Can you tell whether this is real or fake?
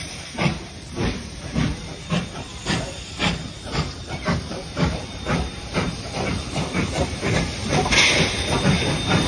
fake